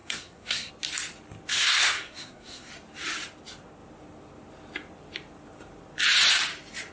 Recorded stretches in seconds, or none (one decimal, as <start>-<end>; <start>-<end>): 0.7-1.5; 2.7-6.9